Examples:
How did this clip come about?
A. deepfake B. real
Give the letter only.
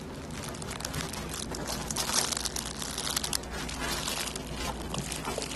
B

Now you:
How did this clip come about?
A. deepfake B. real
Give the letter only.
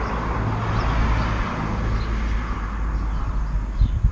B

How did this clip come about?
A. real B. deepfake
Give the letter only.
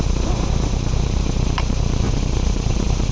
B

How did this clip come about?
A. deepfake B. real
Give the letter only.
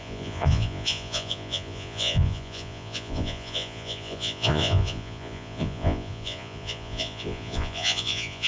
A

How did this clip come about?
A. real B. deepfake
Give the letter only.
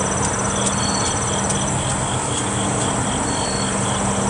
A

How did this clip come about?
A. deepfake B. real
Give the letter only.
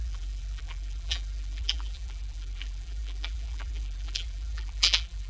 A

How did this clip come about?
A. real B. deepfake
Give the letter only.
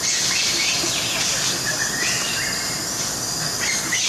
A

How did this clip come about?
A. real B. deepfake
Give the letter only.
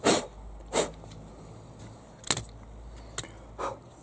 A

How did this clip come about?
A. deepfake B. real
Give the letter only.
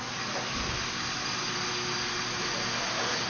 B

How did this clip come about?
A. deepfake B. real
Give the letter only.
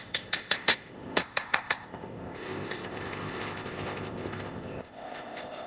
A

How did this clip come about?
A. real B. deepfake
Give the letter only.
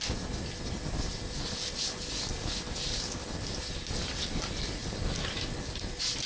A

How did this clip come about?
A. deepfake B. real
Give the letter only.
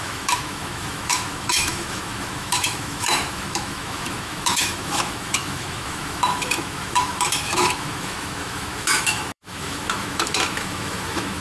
A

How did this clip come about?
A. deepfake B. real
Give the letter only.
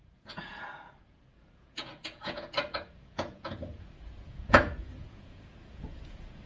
A